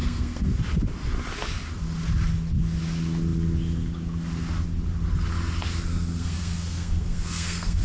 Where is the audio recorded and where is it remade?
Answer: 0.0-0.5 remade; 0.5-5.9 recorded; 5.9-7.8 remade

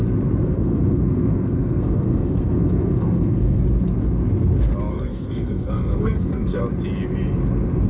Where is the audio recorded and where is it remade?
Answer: 0.0-0.4 recorded; 0.4-3.6 remade; 3.6-4.9 recorded; 4.9-6.6 remade; 6.6-7.9 recorded

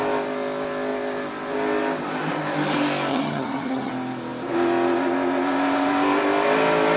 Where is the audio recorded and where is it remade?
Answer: 0.0-3.1 recorded; 3.1-3.9 remade; 3.9-7.0 recorded

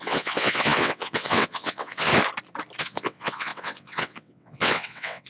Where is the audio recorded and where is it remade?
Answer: 0.0-2.1 remade; 2.1-2.8 recorded; 2.8-5.3 remade

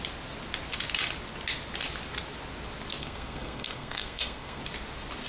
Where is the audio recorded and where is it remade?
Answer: 0.0-3.0 recorded; 3.0-4.6 remade; 4.6-5.3 recorded